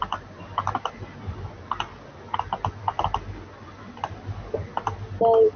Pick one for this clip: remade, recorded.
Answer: recorded